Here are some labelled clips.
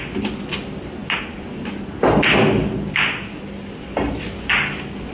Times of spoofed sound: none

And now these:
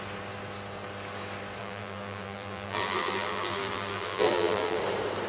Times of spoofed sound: 1.6-4.8